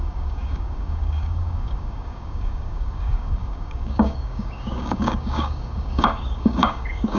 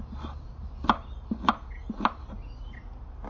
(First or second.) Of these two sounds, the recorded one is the second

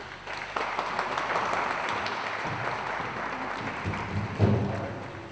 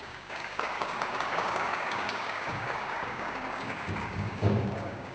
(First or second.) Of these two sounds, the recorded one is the first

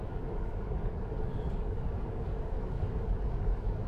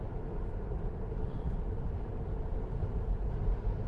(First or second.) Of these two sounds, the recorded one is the second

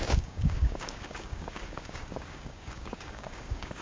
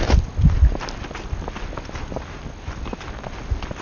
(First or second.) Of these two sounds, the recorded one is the second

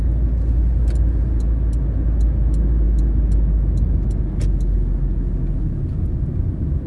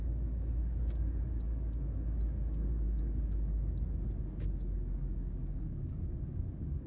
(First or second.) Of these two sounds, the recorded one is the first